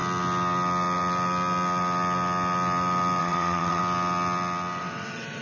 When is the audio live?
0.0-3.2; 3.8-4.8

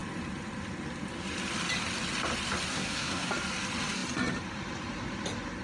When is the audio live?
0.0-2.7; 3.3-5.6

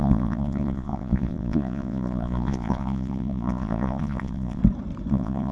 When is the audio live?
4.6-5.1

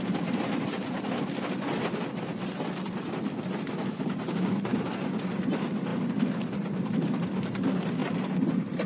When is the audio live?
0.0-5.9; 7.2-8.0

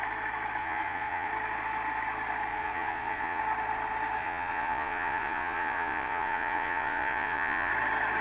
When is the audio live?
0.0-0.6; 1.3-2.5; 3.4-4.2; 7.7-8.2

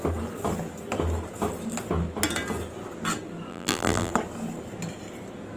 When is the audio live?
0.0-3.5; 4.1-5.6

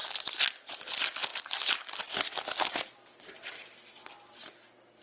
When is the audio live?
0.0-5.0

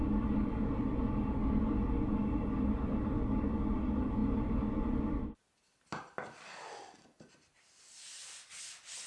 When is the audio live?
0.0-9.1